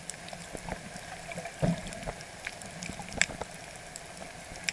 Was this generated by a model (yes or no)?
no